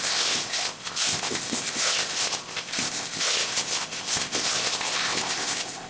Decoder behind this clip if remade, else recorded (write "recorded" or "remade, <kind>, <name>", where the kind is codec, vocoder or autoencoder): remade, codec, ZipCodec